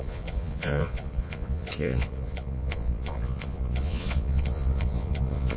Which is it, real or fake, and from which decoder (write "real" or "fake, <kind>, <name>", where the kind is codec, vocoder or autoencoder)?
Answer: fake, vocoder, Vocos